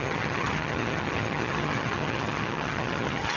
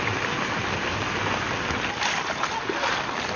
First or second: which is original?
second